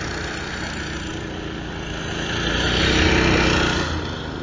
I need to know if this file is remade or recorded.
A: recorded